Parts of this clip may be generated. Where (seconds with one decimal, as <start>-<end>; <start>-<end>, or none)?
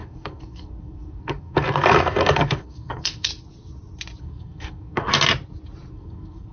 0.0-3.3; 4.2-5.1; 5.9-6.5